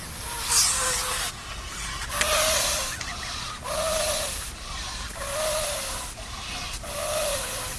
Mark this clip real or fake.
real